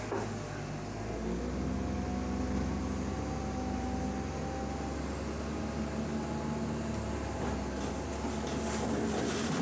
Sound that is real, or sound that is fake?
real